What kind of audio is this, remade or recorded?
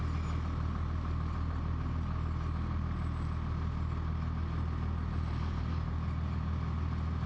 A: recorded